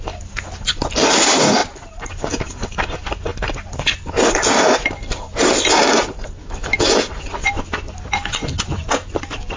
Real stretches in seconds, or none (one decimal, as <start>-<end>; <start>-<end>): 0.0-6.4; 6.9-9.6